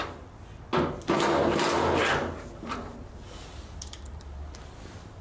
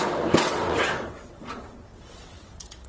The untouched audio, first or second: first